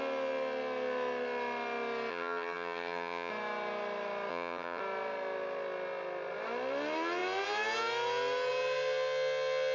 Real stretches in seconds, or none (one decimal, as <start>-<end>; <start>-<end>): 0.0-2.1; 3.3-4.3; 4.8-9.7